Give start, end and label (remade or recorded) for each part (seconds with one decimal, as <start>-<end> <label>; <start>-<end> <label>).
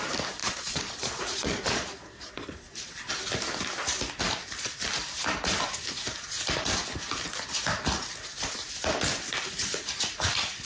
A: 0.0-0.4 recorded; 0.4-3.1 remade; 3.1-10.6 recorded